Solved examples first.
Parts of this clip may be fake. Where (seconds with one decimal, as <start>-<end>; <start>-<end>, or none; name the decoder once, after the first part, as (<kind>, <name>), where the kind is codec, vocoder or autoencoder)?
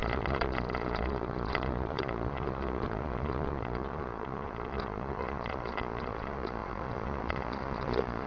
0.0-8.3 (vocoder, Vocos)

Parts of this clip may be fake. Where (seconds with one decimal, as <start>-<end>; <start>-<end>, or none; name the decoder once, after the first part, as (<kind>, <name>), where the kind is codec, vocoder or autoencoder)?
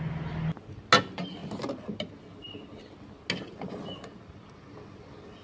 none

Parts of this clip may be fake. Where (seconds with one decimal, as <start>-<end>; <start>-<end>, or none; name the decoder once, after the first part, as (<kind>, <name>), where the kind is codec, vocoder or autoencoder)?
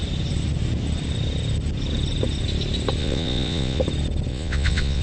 3.0-3.8 (vocoder, Vocos); 4.3-5.0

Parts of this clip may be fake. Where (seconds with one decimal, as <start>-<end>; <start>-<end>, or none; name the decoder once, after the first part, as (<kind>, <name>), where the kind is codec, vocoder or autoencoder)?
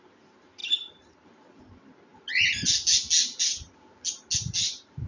none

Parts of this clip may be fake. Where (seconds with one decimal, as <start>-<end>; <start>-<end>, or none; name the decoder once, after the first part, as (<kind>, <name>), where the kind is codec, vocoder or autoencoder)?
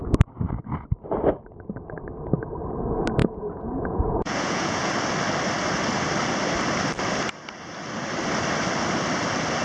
3.2-4.9 (vocoder, Vocos)